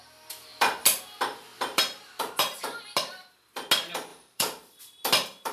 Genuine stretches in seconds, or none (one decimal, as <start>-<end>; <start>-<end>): 0.0-4.1; 4.8-5.5